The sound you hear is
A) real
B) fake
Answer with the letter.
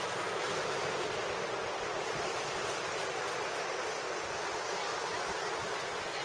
A